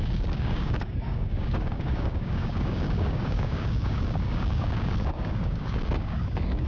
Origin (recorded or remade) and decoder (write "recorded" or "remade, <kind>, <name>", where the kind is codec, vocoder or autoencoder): remade, codec, DAC